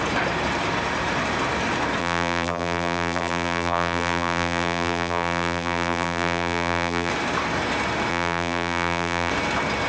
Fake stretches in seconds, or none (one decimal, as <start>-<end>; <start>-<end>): 2.0-7.1; 8.1-9.3